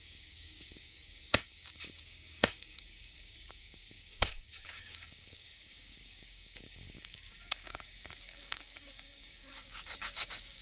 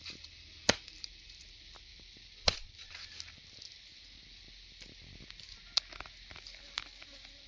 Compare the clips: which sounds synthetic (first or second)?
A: first